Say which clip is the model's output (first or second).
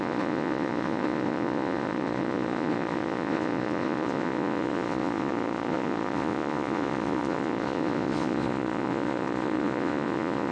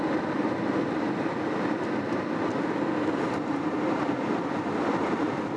first